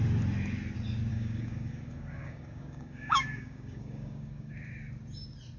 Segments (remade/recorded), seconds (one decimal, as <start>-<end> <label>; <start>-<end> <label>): 0.0-1.1 recorded; 1.1-4.5 remade; 4.5-5.6 recorded